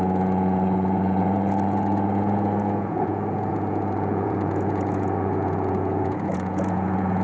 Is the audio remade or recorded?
remade